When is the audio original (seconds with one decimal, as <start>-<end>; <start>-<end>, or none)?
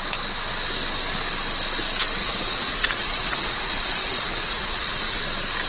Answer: 0.0-2.2; 5.2-5.7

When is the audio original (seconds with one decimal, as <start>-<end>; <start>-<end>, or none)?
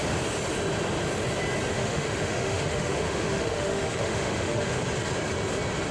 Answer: 0.0-1.7; 4.8-5.9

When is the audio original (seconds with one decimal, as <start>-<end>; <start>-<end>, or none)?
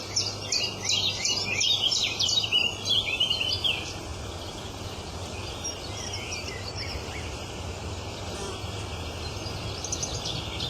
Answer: 0.0-2.0; 3.5-4.1; 8.5-10.7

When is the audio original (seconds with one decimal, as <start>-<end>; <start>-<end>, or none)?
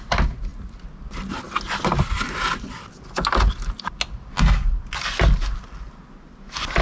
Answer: 0.0-6.8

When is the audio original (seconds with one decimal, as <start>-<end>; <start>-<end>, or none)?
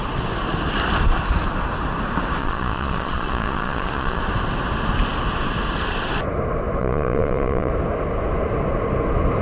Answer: 0.0-2.4; 4.2-6.8; 7.7-9.4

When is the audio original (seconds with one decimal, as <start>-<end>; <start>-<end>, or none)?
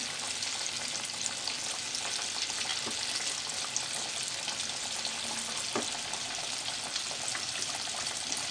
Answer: 0.0-7.0; 7.9-8.5